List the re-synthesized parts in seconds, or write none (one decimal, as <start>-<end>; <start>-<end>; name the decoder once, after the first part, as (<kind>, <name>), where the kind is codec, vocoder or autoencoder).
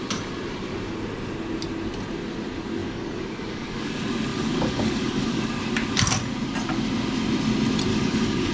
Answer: 2.8-3.9 (codec, DAC); 4.3-5.5; 7.9-8.5